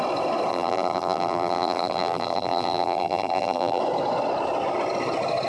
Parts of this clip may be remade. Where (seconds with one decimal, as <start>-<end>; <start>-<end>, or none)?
0.5-3.8